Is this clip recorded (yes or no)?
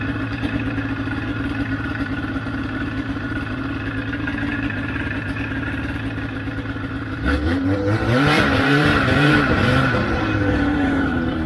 no